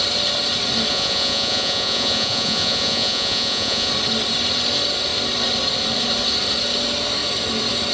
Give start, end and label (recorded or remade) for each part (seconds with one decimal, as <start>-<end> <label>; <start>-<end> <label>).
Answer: 0.0-0.9 recorded; 0.9-3.9 remade; 3.9-7.9 recorded